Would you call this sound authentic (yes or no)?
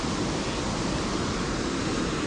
yes